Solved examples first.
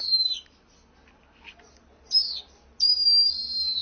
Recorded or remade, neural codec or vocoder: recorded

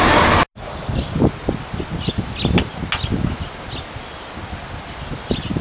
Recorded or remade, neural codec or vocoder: recorded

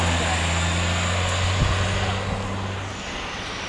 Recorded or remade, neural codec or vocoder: recorded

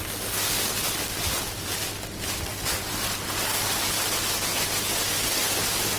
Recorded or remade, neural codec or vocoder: recorded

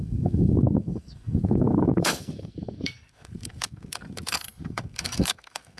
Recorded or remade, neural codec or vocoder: remade, codec, SNAC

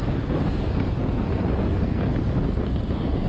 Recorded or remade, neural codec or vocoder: remade, codec, SNAC